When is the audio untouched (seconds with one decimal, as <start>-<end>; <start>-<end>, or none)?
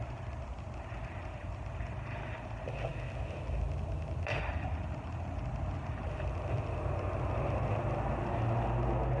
0.0-9.2